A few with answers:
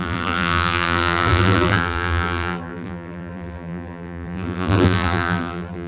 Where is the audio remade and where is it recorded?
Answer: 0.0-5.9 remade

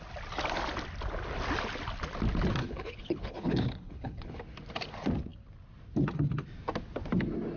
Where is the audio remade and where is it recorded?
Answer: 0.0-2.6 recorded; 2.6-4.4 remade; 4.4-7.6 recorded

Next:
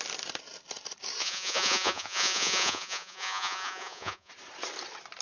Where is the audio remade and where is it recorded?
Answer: 0.0-1.2 recorded; 1.2-4.3 remade; 4.3-5.2 recorded

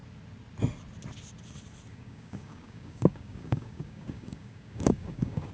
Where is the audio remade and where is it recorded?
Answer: 0.0-1.9 recorded; 1.9-5.5 remade

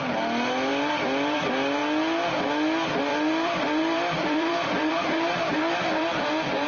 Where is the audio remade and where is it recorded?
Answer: 0.0-0.7 recorded; 0.7-1.4 remade; 1.4-3.1 recorded; 3.1-6.2 remade; 6.2-6.7 recorded

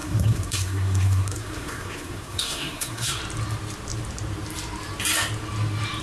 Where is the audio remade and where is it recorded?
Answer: 0.0-3.2 remade; 3.2-6.0 recorded